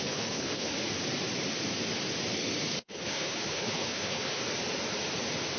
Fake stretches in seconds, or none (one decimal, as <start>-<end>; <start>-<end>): 0.0-0.7; 2.8-4.4